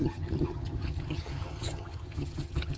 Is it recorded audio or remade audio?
remade